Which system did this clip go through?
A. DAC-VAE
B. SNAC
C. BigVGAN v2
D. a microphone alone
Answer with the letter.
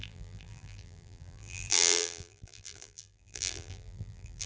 C